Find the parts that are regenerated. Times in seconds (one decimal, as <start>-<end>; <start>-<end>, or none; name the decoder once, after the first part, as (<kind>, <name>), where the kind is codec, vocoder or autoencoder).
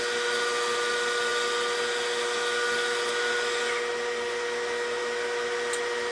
none